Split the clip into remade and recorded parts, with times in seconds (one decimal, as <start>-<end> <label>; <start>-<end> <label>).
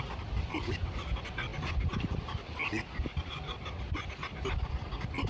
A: 0.0-5.3 recorded